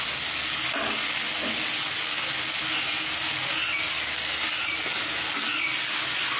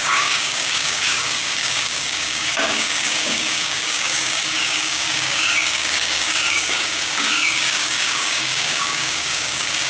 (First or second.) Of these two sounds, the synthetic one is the second